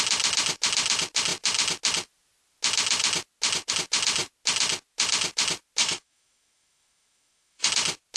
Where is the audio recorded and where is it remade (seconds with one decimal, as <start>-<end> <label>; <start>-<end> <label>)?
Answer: 0.0-5.8 recorded; 5.8-7.7 remade; 7.7-8.2 recorded